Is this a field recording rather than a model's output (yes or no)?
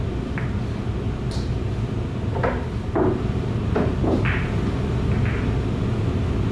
yes